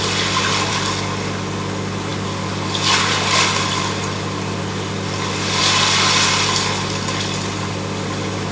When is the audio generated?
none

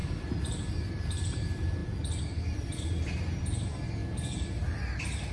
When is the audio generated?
0.8-1.8; 2.8-4.0

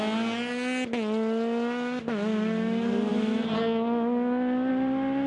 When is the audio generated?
none